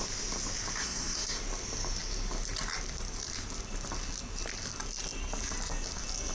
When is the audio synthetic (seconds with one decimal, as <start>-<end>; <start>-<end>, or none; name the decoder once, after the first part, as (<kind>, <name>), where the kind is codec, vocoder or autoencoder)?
0.8-1.4 (codec, SNAC)